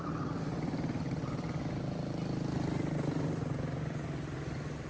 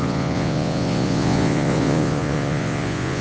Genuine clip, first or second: first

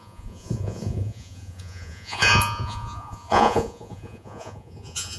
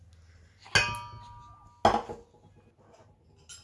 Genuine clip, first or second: second